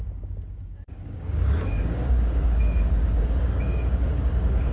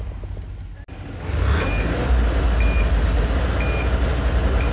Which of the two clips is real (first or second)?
second